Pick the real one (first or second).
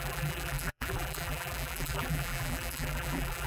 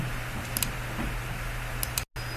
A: second